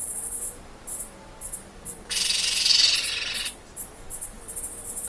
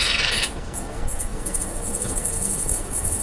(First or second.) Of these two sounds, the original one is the first